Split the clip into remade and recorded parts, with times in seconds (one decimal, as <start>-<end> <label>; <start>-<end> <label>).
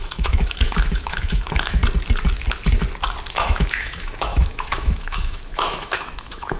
0.0-1.8 remade; 1.8-3.3 recorded; 3.3-6.6 remade